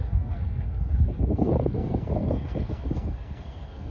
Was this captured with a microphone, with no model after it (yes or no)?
no